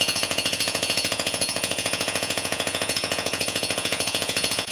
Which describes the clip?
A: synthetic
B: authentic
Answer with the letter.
A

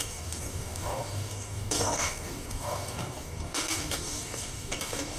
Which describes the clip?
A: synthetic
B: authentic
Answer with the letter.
A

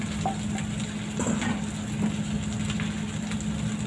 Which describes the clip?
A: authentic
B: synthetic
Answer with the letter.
A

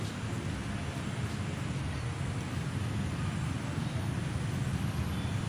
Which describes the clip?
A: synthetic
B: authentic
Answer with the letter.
B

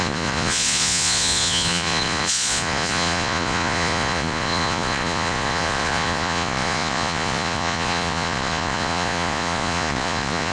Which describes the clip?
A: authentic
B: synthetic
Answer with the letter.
B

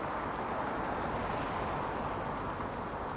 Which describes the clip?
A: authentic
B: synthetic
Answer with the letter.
A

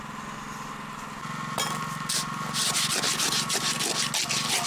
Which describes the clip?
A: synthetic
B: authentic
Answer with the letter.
B